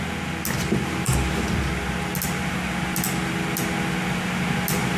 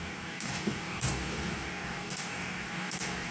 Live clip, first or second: first